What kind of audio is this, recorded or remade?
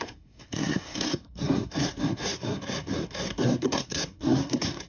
remade